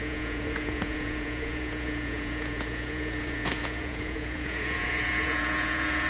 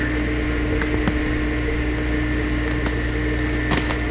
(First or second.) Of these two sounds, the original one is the second